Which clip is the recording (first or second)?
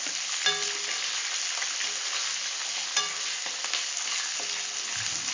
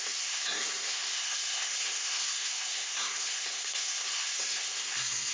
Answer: first